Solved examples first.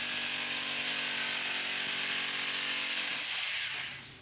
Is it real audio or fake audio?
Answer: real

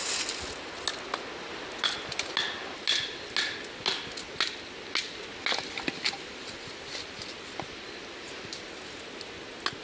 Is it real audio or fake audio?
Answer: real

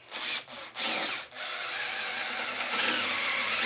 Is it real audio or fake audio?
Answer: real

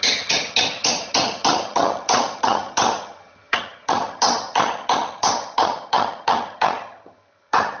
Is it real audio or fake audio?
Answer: fake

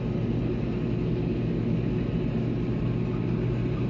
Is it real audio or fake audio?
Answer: real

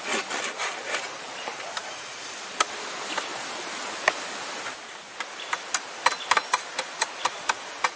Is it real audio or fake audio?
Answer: real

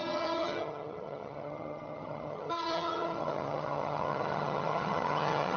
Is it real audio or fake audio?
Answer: fake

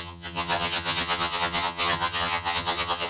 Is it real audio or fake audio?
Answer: fake